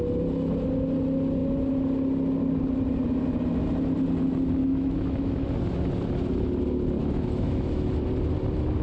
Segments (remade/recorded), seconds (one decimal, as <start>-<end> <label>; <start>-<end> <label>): 0.0-4.6 recorded; 4.6-5.5 remade; 5.5-7.0 recorded; 7.0-7.9 remade; 7.9-8.8 recorded